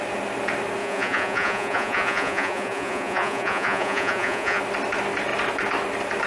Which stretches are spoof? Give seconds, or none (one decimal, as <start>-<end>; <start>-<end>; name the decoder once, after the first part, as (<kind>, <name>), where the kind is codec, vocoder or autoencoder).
0.8-4.6 (vocoder, Vocos)